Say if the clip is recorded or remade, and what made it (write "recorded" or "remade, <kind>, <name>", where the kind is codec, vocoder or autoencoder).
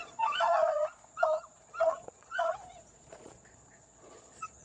remade, vocoder, Vocos